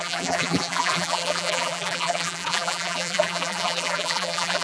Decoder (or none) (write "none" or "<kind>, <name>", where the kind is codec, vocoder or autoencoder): vocoder, BigVGAN v2